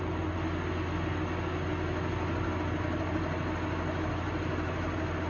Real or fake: real